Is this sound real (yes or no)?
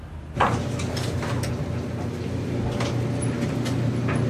yes